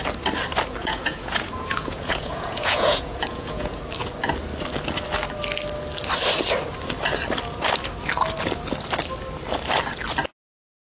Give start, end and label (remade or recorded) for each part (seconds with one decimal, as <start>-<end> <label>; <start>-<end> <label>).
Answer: 0.0-0.8 recorded; 0.8-3.8 remade; 3.8-11.0 recorded